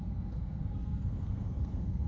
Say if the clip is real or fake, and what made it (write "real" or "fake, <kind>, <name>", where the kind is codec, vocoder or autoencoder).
fake, codec, SNAC